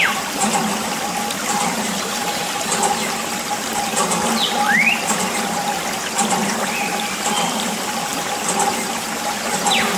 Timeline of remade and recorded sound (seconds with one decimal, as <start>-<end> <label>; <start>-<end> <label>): 0.0-10.0 remade